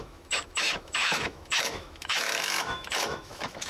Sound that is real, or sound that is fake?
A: fake